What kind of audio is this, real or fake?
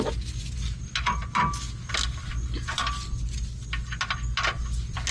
real